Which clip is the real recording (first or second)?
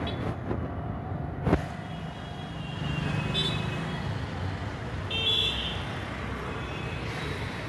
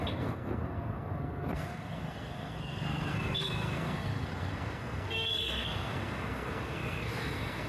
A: first